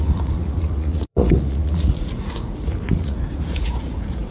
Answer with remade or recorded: remade